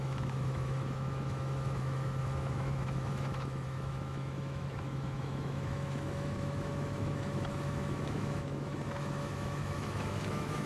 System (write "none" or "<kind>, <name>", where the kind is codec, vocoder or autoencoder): autoencoder, DAC-VAE